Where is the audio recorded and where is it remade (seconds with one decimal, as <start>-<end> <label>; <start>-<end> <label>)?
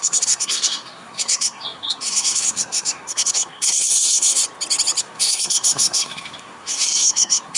0.0-4.4 remade; 4.4-5.0 recorded; 5.0-7.6 remade